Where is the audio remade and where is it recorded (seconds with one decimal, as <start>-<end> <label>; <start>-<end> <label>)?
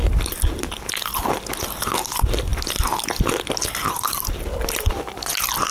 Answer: 0.0-5.7 recorded